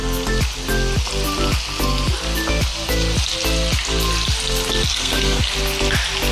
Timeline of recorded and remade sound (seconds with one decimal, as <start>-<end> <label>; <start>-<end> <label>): 0.0-4.9 recorded; 4.9-5.4 remade; 5.4-6.3 recorded